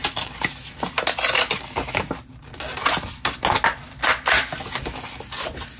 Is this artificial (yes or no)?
no